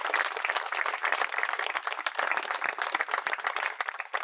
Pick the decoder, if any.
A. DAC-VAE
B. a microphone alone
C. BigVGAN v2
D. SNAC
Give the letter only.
C